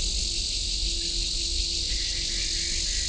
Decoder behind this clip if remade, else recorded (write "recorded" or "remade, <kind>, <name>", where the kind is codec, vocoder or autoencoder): recorded